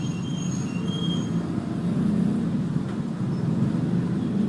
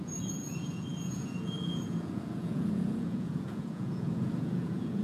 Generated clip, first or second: second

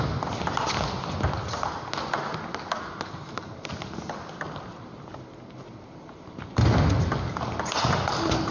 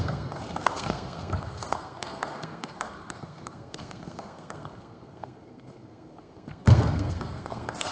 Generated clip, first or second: second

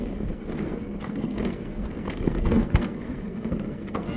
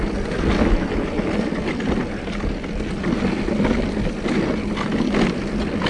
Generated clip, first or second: first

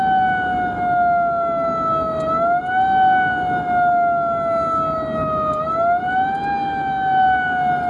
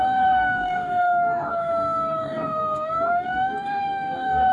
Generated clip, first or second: second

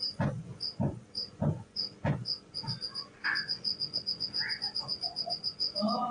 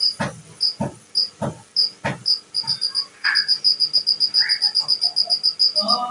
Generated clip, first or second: first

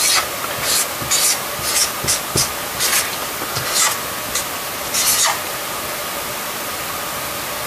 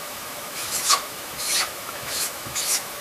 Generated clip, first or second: second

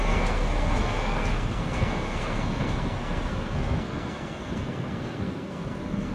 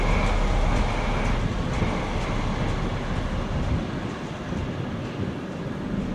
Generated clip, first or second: first